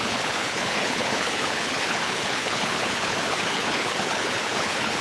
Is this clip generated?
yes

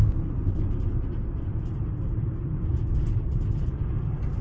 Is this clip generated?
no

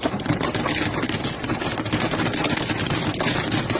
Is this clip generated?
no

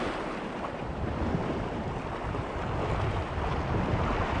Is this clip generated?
no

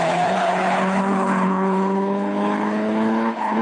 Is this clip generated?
yes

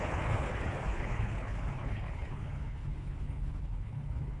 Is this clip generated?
yes